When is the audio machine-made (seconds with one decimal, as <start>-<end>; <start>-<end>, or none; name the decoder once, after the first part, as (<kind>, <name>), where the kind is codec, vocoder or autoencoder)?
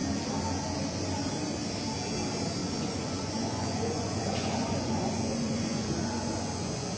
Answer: 2.6-7.0 (vocoder, Vocos)